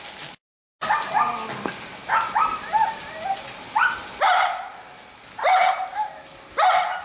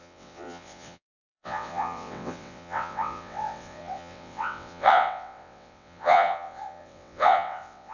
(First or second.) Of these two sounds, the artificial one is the second